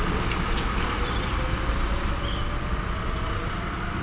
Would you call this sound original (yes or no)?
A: yes